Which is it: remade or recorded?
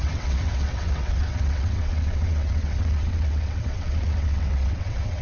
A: remade